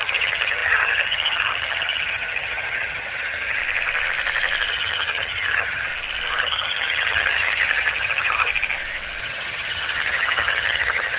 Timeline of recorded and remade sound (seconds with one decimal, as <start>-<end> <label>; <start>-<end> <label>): 0.0-3.6 remade; 3.6-4.7 recorded; 4.7-5.9 remade; 5.9-6.4 recorded; 6.4-8.5 remade; 8.5-9.2 recorded; 9.2-11.2 remade